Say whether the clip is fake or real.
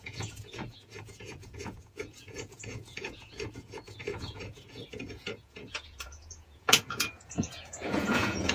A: fake